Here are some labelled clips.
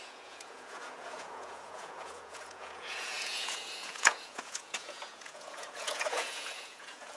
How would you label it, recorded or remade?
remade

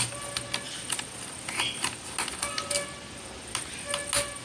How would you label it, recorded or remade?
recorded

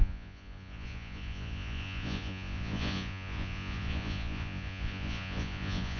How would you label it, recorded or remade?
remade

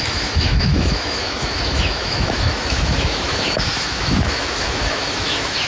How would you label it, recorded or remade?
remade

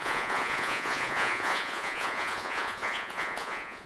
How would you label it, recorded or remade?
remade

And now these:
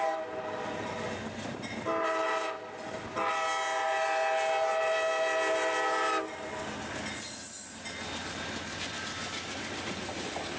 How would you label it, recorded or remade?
recorded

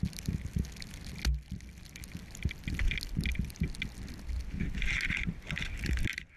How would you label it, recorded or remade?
recorded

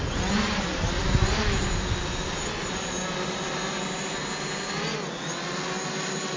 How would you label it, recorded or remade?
recorded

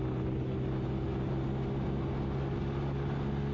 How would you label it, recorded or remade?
recorded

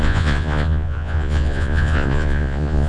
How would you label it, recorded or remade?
remade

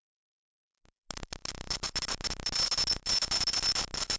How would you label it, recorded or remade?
recorded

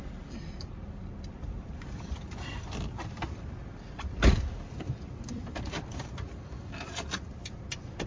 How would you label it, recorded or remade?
remade